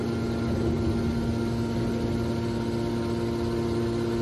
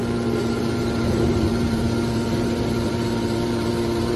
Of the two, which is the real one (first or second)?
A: first